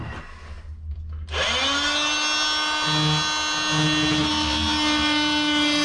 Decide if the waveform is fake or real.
real